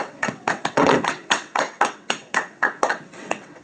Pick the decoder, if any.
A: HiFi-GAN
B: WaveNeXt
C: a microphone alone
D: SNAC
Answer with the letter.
B